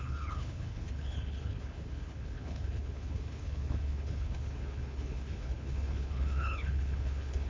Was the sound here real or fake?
fake